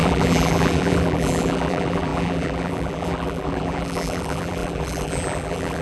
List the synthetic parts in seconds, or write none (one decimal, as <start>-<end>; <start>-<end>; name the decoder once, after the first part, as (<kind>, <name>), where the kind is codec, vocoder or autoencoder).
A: 0.0-5.8 (vocoder, BigVGAN v2)